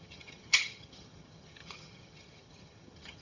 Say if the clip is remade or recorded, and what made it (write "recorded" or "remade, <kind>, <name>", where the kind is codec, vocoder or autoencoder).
remade, vocoder, HiFi-GAN